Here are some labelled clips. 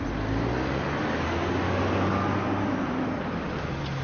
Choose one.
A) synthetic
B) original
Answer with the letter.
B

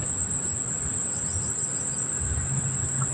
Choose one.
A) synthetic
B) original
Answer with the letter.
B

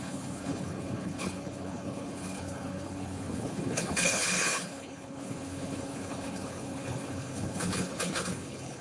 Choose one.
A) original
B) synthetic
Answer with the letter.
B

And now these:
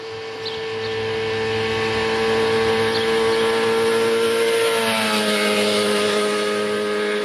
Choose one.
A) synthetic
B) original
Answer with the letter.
B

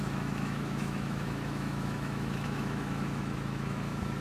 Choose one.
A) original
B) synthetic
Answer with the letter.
B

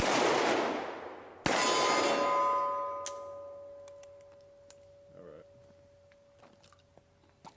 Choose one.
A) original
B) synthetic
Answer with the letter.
A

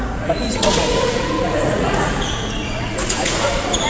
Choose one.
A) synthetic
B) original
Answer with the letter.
A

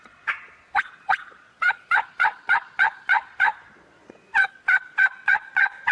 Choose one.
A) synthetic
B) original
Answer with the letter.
A